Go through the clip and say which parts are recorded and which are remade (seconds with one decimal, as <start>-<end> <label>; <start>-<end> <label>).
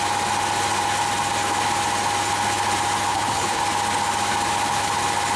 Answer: 0.0-3.1 recorded; 3.1-3.6 remade; 3.6-5.4 recorded